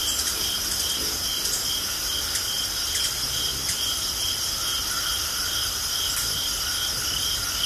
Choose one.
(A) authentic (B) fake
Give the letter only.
A